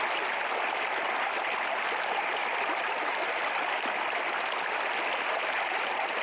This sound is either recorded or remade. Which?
recorded